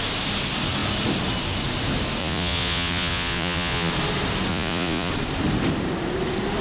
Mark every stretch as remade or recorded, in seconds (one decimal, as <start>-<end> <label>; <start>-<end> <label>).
0.0-2.2 recorded; 2.2-3.9 remade; 3.9-4.5 recorded; 4.5-5.1 remade; 5.1-6.6 recorded